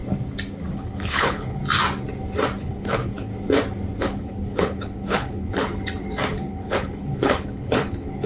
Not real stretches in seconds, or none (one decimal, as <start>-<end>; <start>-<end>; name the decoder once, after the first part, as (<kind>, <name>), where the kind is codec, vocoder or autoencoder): 0.7-1.6 (codec, HILCodec); 2.6-3.3; 4.0-5.7; 6.3-8.3

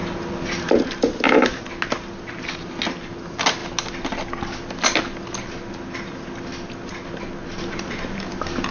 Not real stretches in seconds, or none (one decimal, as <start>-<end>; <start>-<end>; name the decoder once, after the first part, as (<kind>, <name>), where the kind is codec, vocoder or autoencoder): none